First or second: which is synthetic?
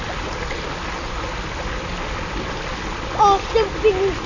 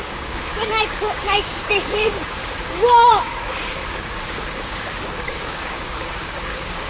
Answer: second